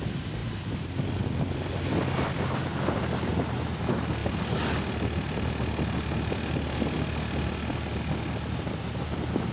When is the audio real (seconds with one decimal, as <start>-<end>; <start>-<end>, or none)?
0.0-9.5